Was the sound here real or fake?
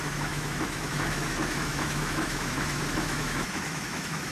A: fake